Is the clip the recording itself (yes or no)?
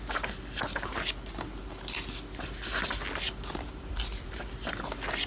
yes